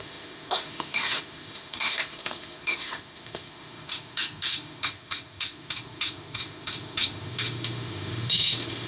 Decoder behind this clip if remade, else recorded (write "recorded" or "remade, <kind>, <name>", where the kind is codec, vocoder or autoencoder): remade, autoencoder, DAC-VAE